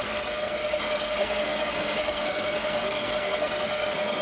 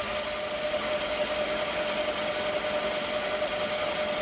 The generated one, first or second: first